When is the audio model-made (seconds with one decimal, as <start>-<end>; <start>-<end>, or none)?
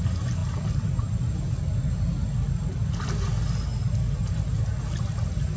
none